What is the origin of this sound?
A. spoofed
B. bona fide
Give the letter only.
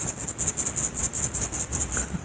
B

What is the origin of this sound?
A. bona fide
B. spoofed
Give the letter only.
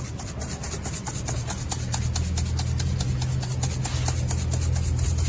A